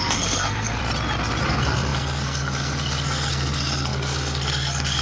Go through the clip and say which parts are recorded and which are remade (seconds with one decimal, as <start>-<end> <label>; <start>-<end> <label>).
0.0-0.8 remade; 0.8-1.5 recorded; 1.5-5.0 remade